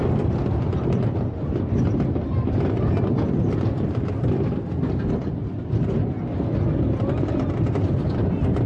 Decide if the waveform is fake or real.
real